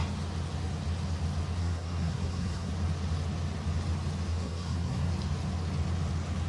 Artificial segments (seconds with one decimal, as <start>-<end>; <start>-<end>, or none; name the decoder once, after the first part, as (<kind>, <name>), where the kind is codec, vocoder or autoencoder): 1.6-2.7 (codec, SNAC); 4.3-5.1